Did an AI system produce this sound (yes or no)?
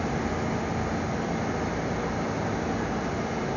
no